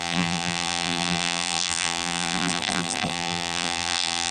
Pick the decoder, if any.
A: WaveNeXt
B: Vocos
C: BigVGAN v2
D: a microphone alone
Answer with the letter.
C